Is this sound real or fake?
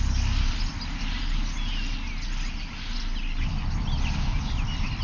real